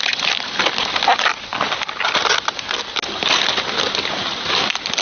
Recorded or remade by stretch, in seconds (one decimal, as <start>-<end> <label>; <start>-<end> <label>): 0.0-5.0 recorded